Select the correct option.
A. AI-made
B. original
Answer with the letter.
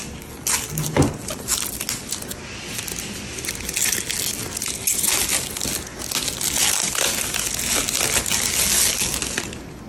B